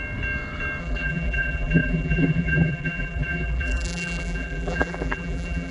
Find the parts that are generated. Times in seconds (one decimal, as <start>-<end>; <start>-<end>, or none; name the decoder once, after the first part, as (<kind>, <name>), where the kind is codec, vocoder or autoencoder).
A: 0.8-5.7 (vocoder, BigVGAN v2)

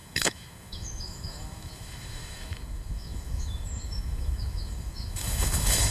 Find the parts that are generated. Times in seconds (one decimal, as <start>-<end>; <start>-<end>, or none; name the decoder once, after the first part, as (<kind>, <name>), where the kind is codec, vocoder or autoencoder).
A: 0.0-5.9 (autoencoder, DAC-VAE)

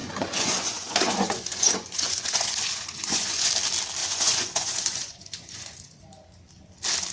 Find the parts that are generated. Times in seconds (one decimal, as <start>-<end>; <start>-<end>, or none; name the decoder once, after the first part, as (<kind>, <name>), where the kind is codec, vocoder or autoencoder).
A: 0.0-3.5 (vocoder, Vocos); 4.0-6.0